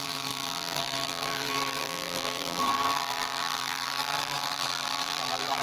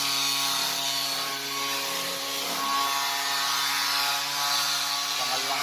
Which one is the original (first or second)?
second